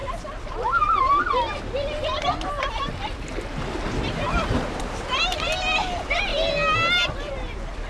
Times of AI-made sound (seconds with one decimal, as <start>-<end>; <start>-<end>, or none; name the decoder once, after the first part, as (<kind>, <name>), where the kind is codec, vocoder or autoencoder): none